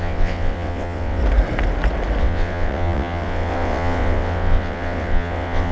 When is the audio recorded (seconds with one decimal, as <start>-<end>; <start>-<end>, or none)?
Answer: 1.2-2.2